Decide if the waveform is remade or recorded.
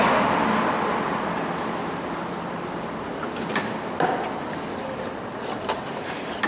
recorded